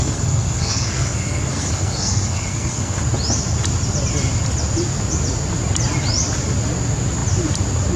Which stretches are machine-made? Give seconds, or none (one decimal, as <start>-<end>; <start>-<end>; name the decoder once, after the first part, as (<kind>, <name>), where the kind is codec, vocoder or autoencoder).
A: 0.0-3.0 (codec, SNAC)